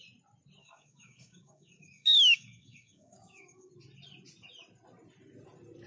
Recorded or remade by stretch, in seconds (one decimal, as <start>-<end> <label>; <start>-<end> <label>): 0.0-0.6 recorded; 0.6-3.7 remade; 3.7-5.9 recorded